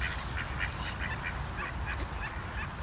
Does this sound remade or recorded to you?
recorded